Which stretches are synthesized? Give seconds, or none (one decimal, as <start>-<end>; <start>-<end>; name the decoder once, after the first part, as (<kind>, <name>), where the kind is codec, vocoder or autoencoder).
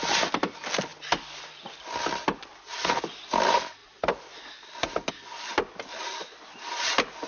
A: none